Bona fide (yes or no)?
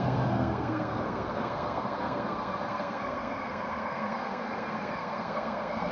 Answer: no